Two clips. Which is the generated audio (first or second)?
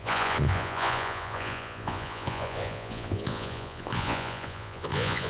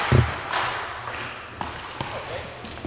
first